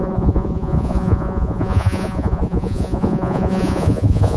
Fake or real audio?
fake